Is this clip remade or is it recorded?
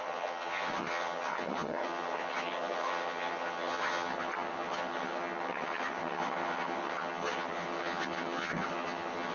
remade